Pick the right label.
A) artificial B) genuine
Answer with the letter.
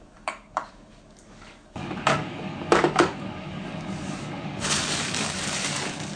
A